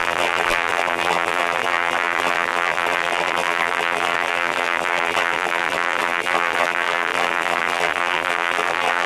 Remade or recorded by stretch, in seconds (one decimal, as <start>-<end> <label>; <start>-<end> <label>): 0.0-9.1 remade